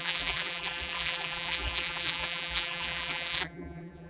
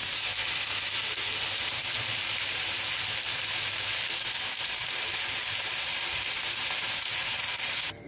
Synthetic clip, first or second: first